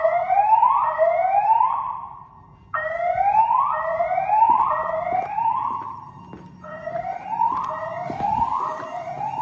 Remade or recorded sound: recorded